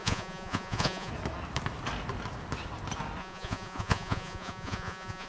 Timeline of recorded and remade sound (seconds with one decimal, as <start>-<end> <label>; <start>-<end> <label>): 0.0-1.1 remade; 1.1-3.2 recorded; 3.2-5.3 remade